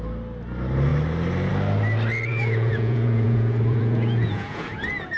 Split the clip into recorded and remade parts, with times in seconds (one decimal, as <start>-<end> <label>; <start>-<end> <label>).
0.0-2.3 recorded; 2.3-5.2 remade